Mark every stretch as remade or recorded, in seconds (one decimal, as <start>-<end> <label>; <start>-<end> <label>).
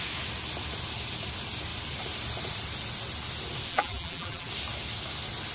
0.0-3.7 recorded; 3.7-4.5 remade; 4.5-5.5 recorded